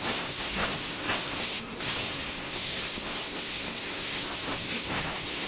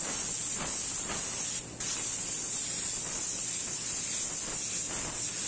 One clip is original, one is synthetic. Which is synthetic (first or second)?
first